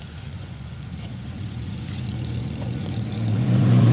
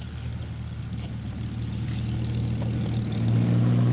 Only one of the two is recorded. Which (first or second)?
second